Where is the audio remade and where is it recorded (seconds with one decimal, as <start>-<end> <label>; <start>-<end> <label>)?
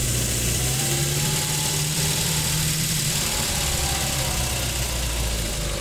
0.0-3.5 remade; 3.5-5.8 recorded